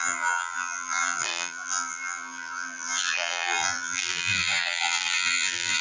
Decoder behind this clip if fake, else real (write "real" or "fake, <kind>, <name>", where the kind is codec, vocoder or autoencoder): fake, vocoder, BigVGAN v2